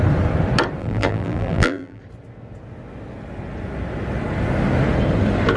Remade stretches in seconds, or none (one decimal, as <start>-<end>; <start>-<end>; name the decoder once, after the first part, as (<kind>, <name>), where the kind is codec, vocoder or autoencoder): 0.8-2.0 (vocoder, BigVGAN v2)

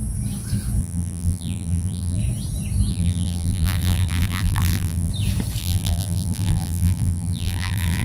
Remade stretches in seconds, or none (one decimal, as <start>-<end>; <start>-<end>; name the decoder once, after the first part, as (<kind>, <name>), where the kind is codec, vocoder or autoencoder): 0.8-2.2 (vocoder, BigVGAN v2); 2.9-5.1; 5.6-8.0

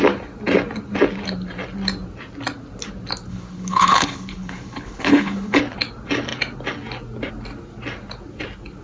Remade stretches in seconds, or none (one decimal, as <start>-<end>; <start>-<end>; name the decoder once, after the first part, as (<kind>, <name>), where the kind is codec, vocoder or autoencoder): 3.3-5.6 (codec, HILCodec)

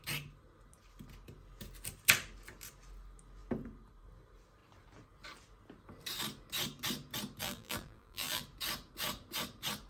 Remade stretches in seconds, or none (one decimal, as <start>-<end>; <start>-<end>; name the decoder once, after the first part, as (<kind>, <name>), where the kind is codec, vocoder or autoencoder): 7.4-8.4 (vocoder, BigVGAN v2)